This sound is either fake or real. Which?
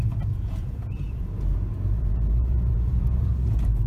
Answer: fake